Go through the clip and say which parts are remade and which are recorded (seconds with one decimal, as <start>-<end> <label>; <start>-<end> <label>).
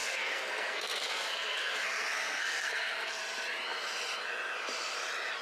0.0-3.2 remade; 3.2-5.4 recorded